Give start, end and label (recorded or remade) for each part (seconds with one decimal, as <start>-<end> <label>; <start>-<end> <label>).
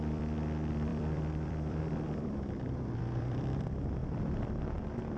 0.0-5.2 remade